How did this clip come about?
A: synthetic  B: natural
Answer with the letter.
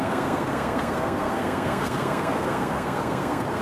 A